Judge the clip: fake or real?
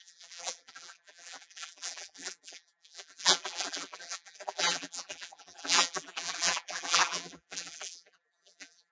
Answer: fake